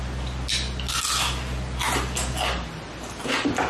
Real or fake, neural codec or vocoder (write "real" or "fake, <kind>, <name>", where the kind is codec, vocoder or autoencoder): real